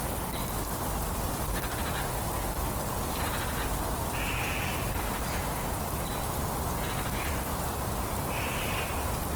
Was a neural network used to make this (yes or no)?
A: no